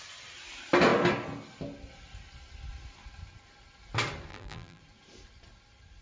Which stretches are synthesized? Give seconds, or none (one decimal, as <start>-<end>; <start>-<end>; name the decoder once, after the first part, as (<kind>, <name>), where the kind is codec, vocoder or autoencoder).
4.3-4.8 (vocoder, BigVGAN v2)